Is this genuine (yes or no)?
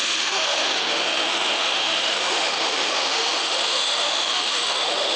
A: no